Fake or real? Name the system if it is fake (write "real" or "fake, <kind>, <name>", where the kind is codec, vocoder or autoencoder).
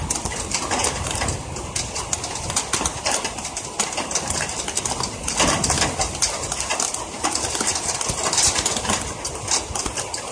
real